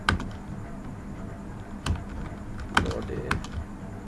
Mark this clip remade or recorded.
recorded